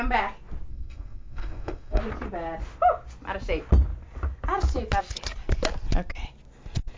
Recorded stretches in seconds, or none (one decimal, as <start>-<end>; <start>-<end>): 0.0-0.7; 2.0-7.0

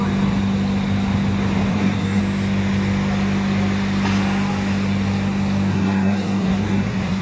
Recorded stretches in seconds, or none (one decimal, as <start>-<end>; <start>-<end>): 0.0-1.7; 2.2-5.7

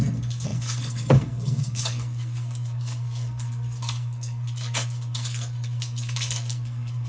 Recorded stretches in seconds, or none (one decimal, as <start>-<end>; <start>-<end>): none